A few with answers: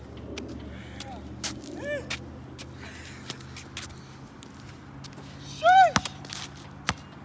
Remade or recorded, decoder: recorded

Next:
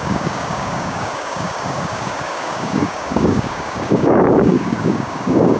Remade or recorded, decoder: remade, codec, DAC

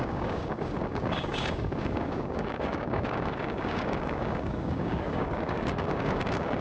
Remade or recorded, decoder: remade, codec, DAC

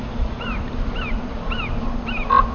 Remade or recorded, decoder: recorded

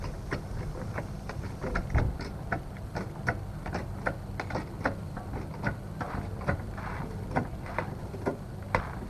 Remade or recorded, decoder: recorded